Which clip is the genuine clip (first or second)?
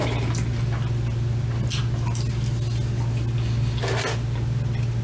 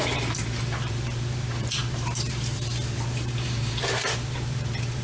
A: first